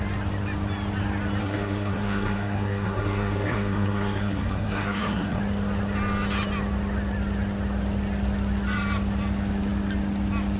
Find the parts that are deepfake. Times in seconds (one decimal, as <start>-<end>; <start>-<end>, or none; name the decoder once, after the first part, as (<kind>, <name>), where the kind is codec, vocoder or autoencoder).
1.4-5.4 (codec, SNAC)

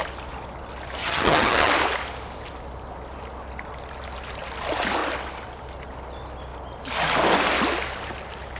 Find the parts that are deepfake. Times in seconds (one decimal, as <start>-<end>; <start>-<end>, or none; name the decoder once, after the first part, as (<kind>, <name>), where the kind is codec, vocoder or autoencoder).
1.0-1.7 (vocoder, HiFi-GAN)

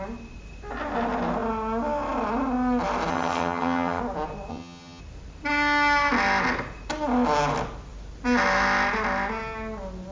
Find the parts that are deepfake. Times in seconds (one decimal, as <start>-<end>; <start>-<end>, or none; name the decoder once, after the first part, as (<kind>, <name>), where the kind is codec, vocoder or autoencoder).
3.1-4.0 (vocoder, HiFi-GAN); 4.5-5.0

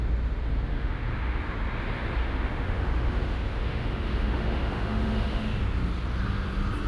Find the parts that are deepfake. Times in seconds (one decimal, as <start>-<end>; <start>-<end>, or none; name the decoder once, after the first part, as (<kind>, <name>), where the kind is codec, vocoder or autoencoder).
0.7-1.4 (autoencoder, DAC-VAE); 2.2-5.6

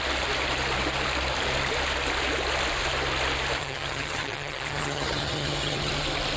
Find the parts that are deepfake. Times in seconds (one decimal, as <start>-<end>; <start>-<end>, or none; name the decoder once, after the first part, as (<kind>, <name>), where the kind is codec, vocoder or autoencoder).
3.6-5.9 (vocoder, HiFi-GAN)